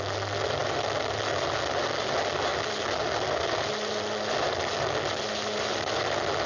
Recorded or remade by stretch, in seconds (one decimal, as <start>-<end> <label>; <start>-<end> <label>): 0.0-6.5 recorded

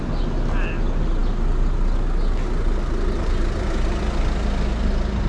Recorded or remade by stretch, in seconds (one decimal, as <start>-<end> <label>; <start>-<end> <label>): 0.0-5.3 recorded

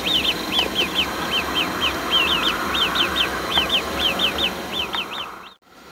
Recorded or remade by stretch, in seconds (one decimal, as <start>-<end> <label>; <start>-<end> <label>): 0.0-3.3 recorded; 3.3-3.9 remade; 3.9-5.9 recorded

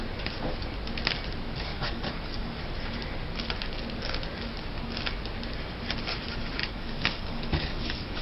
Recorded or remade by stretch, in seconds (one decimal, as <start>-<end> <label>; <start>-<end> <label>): 0.0-1.7 recorded; 1.7-2.6 remade; 2.6-6.6 recorded; 6.6-8.2 remade

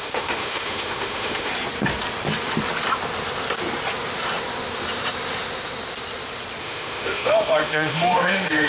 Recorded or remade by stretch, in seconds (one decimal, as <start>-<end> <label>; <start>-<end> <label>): 0.0-1.5 remade; 1.5-6.6 recorded; 6.6-8.7 remade

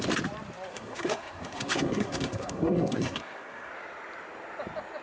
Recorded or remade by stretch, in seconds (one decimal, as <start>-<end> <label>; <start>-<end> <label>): 0.0-0.7 recorded; 0.7-3.7 remade; 3.7-5.0 recorded

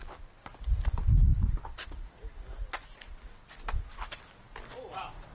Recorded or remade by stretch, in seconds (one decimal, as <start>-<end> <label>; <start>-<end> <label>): 0.0-5.3 recorded